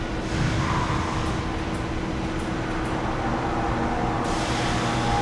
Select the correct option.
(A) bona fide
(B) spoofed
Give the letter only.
A